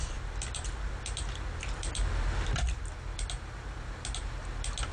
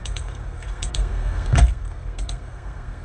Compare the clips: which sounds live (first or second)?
first